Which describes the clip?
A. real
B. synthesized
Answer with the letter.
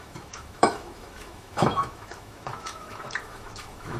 B